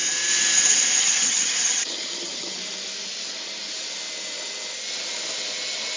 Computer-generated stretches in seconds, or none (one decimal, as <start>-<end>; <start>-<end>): 1.0-2.6